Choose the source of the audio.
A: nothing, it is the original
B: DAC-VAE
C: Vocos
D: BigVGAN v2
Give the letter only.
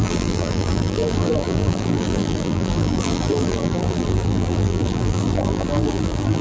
D